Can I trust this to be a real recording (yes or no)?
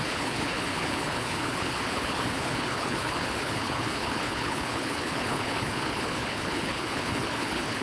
no